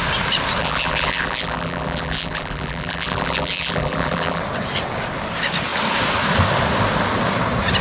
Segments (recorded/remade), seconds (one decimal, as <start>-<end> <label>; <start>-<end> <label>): 0.0-0.6 recorded; 0.6-4.4 remade; 4.4-7.8 recorded